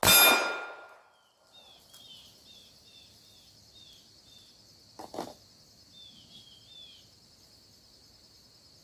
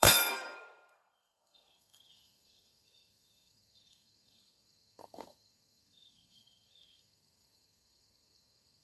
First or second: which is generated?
second